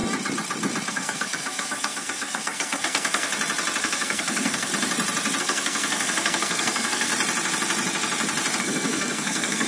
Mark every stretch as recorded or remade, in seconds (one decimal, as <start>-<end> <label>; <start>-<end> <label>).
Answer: 0.0-0.9 recorded; 0.9-3.3 remade; 3.3-3.8 recorded; 3.8-4.7 remade; 4.7-5.4 recorded; 5.4-7.1 remade; 7.1-8.6 recorded; 8.6-9.7 remade